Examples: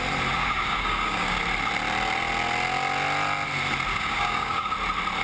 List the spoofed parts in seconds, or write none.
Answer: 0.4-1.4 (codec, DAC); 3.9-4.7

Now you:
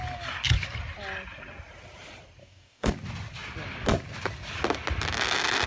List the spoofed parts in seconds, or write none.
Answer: 2.4-2.9 (codec, DAC)

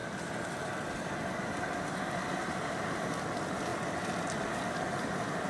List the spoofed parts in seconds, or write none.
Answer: none

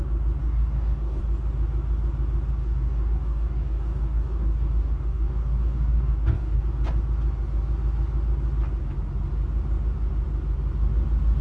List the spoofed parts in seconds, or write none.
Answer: 0.4-1.2 (codec, DAC); 2.6-6.6